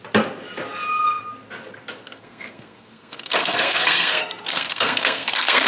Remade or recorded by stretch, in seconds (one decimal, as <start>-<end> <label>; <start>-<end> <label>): 0.0-2.0 recorded; 2.0-5.7 remade